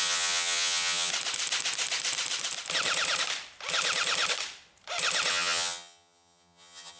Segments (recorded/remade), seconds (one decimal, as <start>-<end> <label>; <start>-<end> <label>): 0.0-1.1 remade; 1.1-5.3 recorded; 5.3-7.0 remade